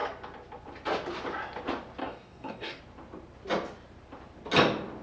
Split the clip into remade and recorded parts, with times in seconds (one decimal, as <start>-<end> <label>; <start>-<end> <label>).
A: 0.0-2.0 recorded; 2.0-2.8 remade; 2.8-5.0 recorded